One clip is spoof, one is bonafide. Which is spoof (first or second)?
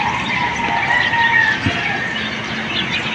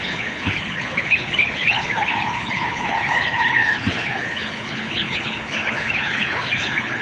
second